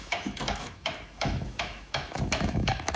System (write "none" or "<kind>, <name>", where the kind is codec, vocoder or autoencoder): autoencoder, DAC-VAE